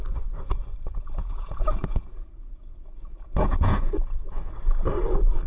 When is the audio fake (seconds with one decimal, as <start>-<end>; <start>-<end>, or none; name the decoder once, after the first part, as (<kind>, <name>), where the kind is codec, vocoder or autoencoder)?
1.2-4.5 (vocoder, Vocos)

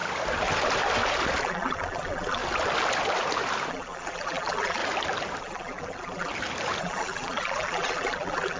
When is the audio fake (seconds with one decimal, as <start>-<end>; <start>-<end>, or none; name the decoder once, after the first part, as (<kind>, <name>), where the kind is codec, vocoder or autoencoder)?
1.4-2.4 (vocoder, BigVGAN v2); 3.7-4.8; 5.4-6.3; 6.8-8.6

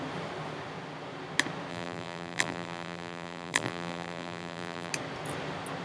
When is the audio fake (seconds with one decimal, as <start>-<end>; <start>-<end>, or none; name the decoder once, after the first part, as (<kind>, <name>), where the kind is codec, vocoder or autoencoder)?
1.7-4.9 (vocoder, BigVGAN v2)

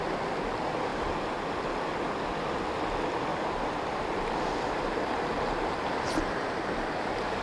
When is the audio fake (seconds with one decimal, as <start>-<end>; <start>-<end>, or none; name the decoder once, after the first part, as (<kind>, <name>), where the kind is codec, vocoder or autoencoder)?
0.9-1.7 (vocoder, BigVGAN v2); 3.3-7.4

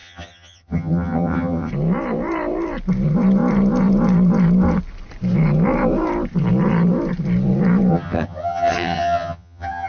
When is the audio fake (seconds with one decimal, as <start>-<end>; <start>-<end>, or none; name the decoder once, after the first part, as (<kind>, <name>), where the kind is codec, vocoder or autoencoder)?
0.0-1.7 (vocoder, HiFi-GAN); 7.9-9.9

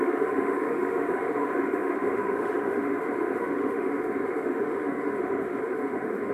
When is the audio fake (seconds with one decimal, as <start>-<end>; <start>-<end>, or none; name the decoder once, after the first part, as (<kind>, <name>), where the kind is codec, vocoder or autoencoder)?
0.0-6.3 (autoencoder, DAC-VAE)